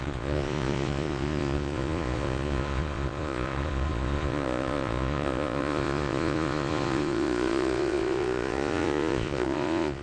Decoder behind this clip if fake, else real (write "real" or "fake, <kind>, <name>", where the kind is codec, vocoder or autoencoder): fake, vocoder, Vocos